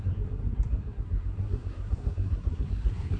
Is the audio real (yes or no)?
no